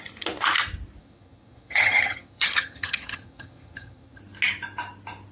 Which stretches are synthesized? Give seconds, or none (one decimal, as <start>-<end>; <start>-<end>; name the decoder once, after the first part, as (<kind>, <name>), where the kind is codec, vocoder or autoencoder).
1.0-4.2 (vocoder, HiFi-GAN)